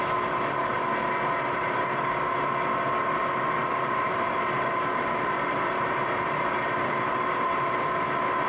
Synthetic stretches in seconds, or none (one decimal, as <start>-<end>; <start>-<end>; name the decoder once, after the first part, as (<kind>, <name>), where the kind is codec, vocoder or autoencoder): 3.2-7.1 (vocoder, BigVGAN v2)